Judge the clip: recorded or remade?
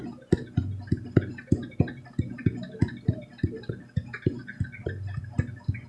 recorded